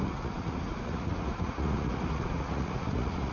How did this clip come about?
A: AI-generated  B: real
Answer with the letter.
A